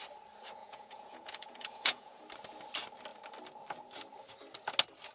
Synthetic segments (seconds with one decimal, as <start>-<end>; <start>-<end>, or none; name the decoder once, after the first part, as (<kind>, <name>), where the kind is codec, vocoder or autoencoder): 0.6-2.2 (vocoder, Vocos)